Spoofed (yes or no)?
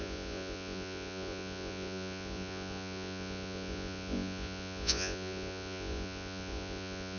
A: yes